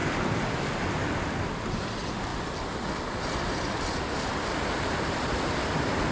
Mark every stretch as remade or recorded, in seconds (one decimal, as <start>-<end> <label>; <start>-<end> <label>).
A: 0.0-6.1 recorded